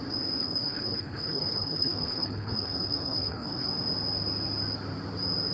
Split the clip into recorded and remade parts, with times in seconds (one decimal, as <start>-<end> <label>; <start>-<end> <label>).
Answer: 0.0-0.4 recorded; 0.4-3.7 remade; 3.7-5.5 recorded